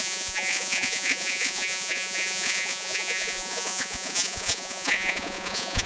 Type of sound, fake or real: fake